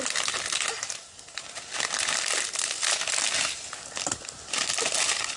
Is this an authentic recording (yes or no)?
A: yes